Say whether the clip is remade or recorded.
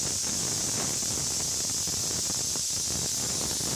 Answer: recorded